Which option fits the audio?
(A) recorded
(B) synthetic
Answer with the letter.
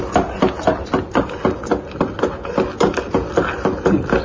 A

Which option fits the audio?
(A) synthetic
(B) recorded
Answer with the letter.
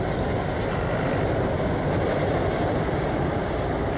B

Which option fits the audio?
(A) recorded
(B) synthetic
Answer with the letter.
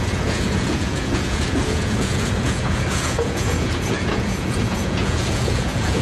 B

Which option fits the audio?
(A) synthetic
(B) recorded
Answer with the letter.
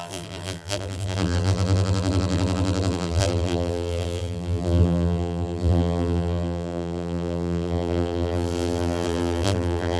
A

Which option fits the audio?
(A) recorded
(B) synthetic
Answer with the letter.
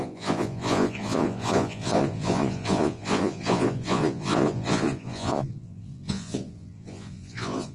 B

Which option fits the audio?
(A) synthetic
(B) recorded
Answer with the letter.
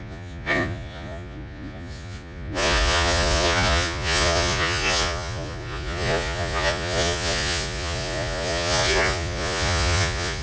A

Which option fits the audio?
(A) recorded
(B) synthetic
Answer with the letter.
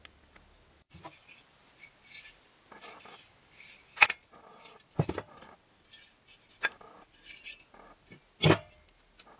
A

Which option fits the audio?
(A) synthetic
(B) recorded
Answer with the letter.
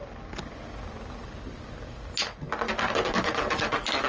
B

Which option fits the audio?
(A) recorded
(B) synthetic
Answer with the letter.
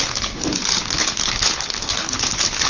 B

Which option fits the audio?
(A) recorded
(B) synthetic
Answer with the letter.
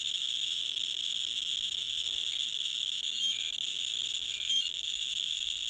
B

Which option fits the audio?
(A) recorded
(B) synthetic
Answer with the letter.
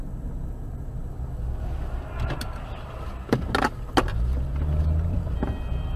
A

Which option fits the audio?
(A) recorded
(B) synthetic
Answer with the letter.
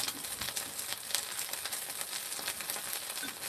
A